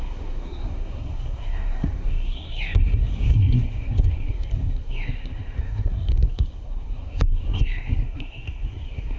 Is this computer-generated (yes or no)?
yes